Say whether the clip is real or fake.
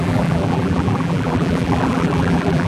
fake